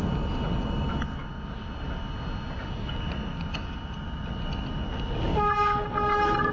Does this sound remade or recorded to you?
recorded